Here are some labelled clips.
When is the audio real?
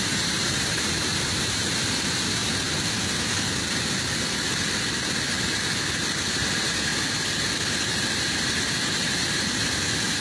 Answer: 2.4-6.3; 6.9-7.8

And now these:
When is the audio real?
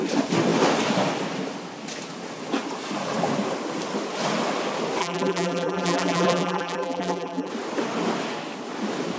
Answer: 0.0-5.0; 7.5-9.2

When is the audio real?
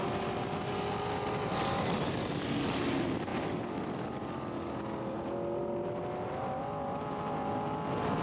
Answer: 0.0-8.2